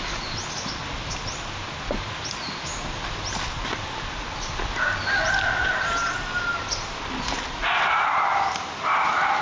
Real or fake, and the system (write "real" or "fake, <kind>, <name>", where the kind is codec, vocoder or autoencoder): real